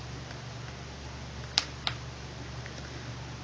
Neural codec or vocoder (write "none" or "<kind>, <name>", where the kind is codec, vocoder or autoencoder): none